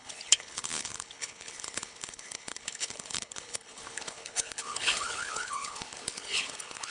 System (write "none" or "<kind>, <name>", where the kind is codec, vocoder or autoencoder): codec, HILCodec